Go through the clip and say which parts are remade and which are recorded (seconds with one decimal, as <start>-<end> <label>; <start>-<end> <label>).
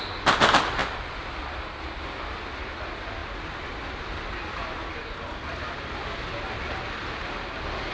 0.0-7.9 recorded